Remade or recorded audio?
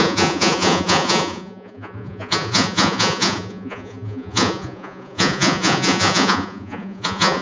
remade